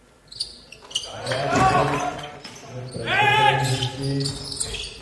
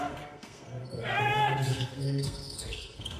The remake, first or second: second